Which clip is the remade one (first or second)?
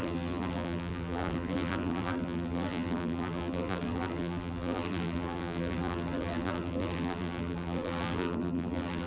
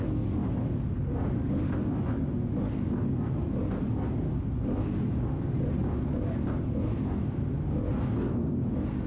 first